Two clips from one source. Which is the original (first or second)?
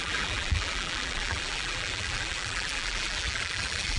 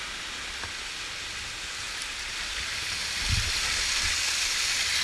second